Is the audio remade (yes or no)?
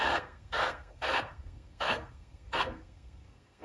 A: yes